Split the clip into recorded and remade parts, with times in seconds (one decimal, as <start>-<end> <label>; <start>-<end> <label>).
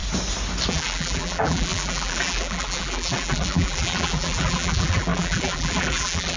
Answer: 0.0-0.7 recorded; 0.7-6.4 remade